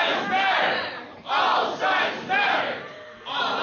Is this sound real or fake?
real